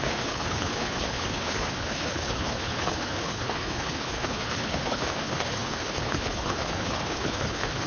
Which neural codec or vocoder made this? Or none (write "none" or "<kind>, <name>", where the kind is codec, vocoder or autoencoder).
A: codec, HILCodec